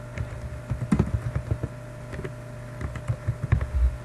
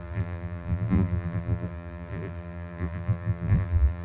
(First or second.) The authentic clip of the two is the first